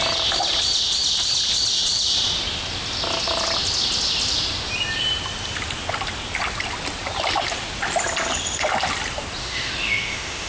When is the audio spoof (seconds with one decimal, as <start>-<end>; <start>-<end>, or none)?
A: 9.4-10.5